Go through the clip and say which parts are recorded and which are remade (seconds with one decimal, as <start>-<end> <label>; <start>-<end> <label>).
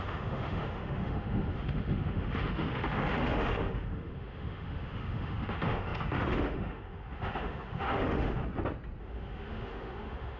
0.0-8.4 remade; 8.4-9.0 recorded; 9.0-10.4 remade